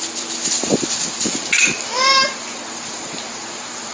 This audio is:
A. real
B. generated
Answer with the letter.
A